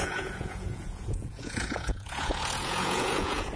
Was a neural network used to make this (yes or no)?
yes